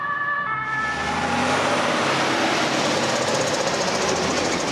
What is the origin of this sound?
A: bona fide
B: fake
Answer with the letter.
A